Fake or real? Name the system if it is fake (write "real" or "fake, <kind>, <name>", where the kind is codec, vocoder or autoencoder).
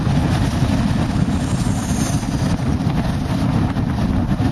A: real